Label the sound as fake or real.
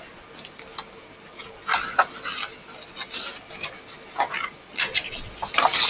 real